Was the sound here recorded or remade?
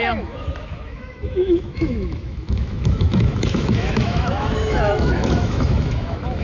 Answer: remade